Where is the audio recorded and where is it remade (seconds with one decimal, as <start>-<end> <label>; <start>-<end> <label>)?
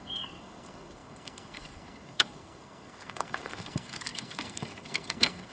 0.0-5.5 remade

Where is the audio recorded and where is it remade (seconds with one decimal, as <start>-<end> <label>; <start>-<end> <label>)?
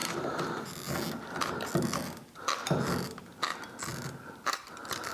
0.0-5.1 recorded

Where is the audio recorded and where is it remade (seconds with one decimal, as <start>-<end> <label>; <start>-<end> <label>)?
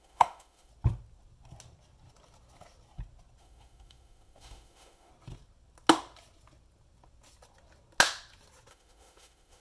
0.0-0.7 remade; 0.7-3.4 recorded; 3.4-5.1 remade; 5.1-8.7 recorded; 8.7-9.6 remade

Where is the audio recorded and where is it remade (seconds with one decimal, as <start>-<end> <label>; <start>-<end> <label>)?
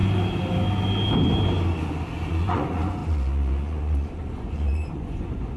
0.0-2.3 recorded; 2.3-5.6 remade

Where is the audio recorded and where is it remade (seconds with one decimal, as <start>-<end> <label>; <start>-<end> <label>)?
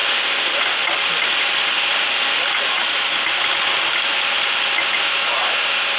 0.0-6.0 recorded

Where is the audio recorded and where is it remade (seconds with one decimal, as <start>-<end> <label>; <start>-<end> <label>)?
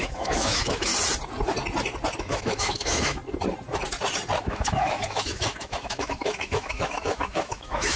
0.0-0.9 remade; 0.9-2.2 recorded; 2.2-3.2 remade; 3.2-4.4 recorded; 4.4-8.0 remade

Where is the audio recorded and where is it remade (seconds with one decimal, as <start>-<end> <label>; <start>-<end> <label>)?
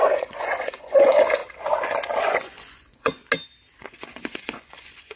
0.0-1.4 remade; 1.4-2.2 recorded; 2.2-3.2 remade; 3.2-3.8 recorded; 3.8-5.2 remade